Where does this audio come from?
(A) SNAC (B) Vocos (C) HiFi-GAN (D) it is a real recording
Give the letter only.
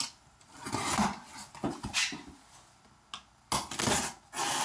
D